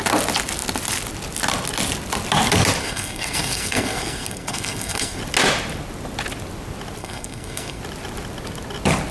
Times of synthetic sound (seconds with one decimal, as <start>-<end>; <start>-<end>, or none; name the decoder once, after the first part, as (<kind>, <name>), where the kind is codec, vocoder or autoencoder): 2.8-5.2 (codec, SNAC); 7.0-7.8